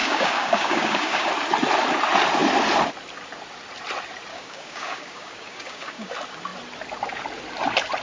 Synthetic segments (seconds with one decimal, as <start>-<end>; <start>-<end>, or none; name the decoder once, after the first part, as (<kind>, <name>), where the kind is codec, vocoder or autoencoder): 0.0-1.3 (codec, DAC); 4.3-6.1